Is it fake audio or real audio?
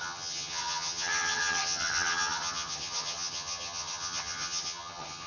fake